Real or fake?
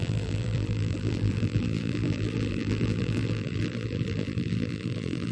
fake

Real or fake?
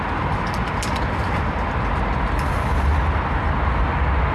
real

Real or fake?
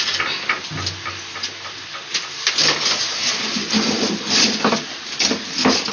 real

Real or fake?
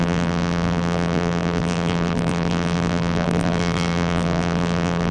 fake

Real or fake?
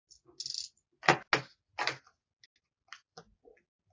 real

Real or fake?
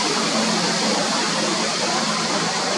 real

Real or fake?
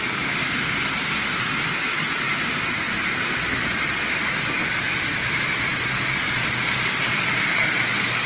fake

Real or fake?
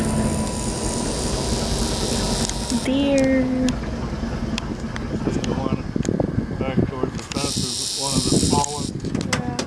real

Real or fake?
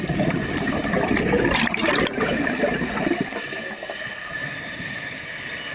fake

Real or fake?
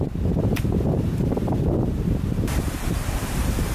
fake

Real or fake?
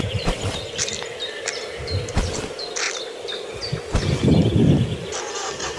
real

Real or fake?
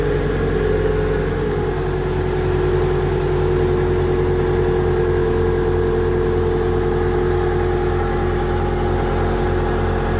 real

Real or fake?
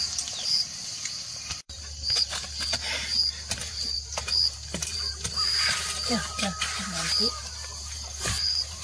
fake